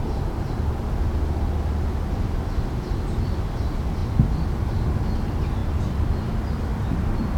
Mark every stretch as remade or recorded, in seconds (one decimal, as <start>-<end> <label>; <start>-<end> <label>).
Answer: 0.0-7.4 recorded